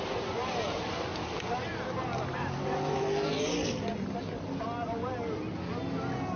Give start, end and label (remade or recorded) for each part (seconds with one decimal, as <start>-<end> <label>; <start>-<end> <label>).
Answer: 0.0-6.4 recorded